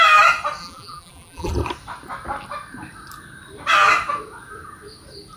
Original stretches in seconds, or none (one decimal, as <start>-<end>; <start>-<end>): 0.0-0.6; 1.5-5.4